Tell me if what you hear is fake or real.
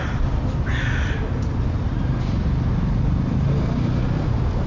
real